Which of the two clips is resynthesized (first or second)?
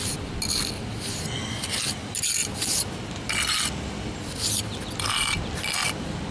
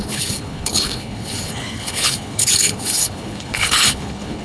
second